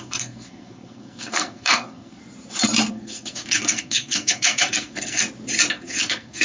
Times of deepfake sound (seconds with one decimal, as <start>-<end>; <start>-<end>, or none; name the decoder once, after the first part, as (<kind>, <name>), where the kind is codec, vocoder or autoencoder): 0.0-2.2 (codec, SNAC); 2.9-5.2; 5.7-6.4